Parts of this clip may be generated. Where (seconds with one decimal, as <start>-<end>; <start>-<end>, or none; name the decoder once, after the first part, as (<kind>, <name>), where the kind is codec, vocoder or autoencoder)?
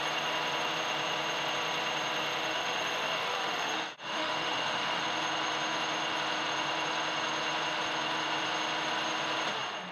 2.4-5.0 (autoencoder, DAC-VAE)